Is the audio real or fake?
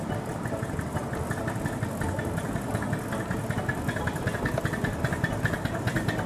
real